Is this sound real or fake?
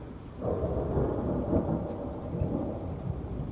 real